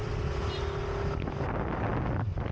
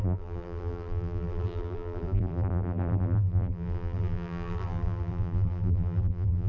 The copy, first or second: second